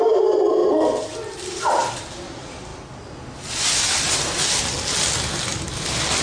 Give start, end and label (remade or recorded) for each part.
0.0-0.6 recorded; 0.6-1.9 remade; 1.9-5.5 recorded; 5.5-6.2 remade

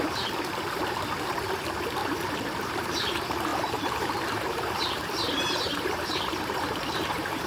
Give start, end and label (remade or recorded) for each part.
0.0-7.5 remade

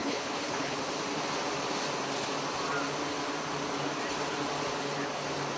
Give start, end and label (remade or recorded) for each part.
0.0-0.8 remade; 0.8-5.6 recorded

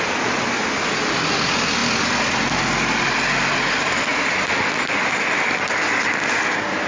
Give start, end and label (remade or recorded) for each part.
0.0-6.9 recorded

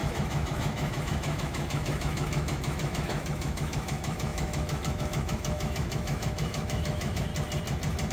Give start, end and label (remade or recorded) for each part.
0.0-7.3 remade; 7.3-8.1 recorded

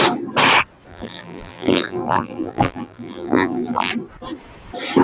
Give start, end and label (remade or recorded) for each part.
0.0-0.9 recorded; 0.9-3.9 remade; 3.9-5.0 recorded

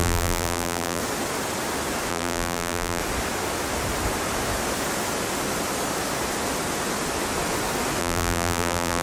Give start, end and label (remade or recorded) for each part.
0.0-1.0 remade; 1.0-2.1 recorded; 2.1-3.0 remade; 3.0-8.0 recorded; 8.0-9.0 remade